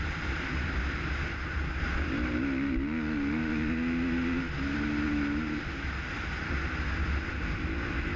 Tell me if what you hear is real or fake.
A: real